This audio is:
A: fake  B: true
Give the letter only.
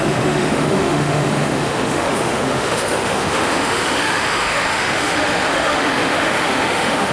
A